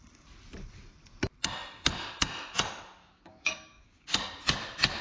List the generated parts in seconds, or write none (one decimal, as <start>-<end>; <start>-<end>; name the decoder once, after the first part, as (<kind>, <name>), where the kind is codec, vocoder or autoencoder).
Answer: 3.0-4.1 (codec, DAC)